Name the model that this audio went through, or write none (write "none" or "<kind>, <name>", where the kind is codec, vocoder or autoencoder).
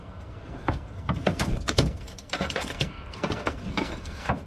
codec, SNAC